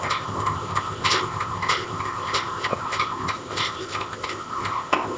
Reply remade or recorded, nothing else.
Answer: remade